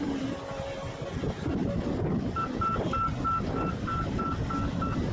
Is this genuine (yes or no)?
yes